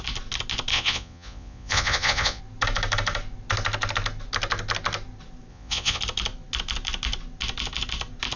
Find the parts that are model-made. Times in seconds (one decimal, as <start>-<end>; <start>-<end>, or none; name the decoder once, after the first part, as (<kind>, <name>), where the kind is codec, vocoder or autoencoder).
0.7-2.4 (vocoder, Vocos); 5.5-6.0